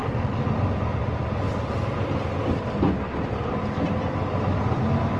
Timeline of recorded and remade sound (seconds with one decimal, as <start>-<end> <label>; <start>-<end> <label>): 0.0-0.6 remade; 0.6-5.2 recorded